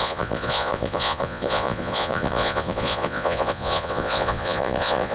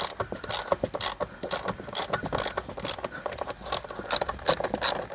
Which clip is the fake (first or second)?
first